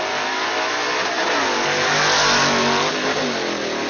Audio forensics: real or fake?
real